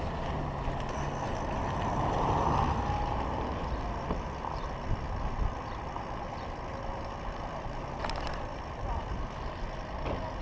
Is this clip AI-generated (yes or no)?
no